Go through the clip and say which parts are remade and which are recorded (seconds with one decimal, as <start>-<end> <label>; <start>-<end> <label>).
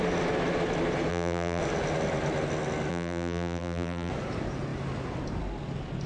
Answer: 0.0-1.1 recorded; 1.1-1.6 remade; 1.6-2.9 recorded; 2.9-4.1 remade; 4.1-6.1 recorded